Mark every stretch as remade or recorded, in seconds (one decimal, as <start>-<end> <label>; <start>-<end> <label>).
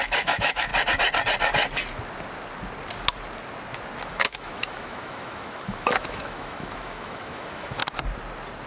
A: 0.0-0.7 remade; 0.7-4.1 recorded; 4.1-7.8 remade; 7.8-8.7 recorded